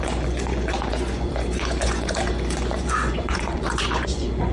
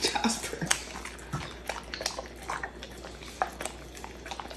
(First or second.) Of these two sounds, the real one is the second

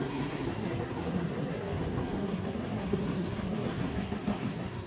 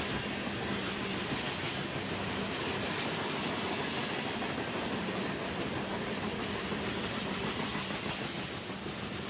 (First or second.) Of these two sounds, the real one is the second